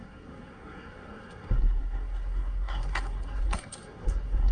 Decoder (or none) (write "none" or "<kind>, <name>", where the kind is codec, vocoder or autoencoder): codec, SNAC